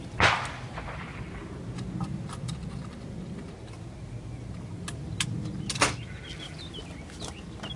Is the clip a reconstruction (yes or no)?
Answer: no